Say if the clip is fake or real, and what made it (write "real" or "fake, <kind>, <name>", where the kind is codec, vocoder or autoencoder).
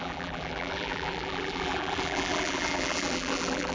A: fake, vocoder, BigVGAN v2